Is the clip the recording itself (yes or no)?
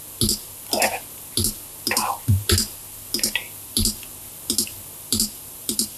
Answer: yes